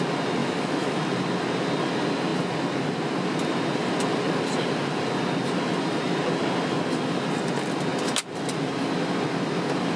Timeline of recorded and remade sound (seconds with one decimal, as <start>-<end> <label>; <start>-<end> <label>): 0.0-0.4 recorded; 0.4-1.0 remade; 1.0-10.0 recorded